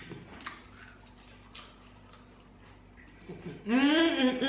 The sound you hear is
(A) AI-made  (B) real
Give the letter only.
B